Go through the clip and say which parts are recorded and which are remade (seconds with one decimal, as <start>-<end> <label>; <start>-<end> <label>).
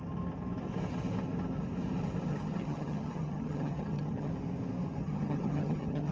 0.0-2.3 recorded; 2.3-4.3 remade; 4.3-5.0 recorded; 5.0-6.1 remade